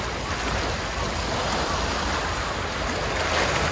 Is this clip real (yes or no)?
yes